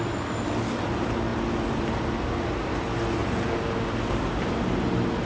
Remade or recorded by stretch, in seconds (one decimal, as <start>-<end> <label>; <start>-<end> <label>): 0.0-5.3 recorded

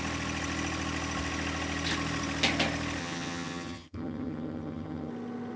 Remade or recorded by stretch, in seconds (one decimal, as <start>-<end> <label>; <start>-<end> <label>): 0.0-3.0 recorded; 3.0-5.1 remade; 5.1-5.6 recorded

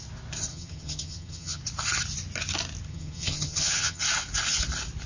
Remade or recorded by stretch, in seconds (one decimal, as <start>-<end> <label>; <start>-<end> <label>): 0.0-0.5 recorded; 0.5-1.6 remade; 1.6-2.9 recorded; 2.9-4.0 remade; 4.0-5.1 recorded

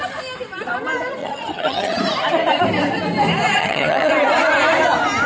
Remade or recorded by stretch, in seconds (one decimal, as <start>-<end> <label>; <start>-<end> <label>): 0.0-1.2 recorded; 1.2-2.0 remade; 2.0-3.6 recorded; 3.6-4.1 remade; 4.1-5.3 recorded

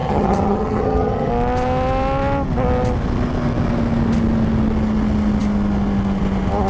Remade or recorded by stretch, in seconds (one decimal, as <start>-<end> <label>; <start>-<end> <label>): 0.0-1.3 remade; 1.3-6.7 recorded

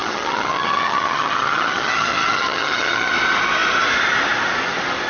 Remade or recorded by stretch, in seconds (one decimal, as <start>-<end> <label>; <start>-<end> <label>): 0.0-3.1 remade; 3.1-5.1 recorded

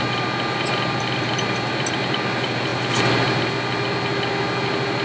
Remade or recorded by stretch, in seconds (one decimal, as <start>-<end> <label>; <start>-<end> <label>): 0.0-5.0 recorded

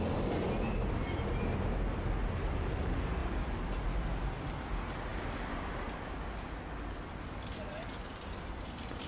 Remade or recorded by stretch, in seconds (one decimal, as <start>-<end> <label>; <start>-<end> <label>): 0.0-9.1 recorded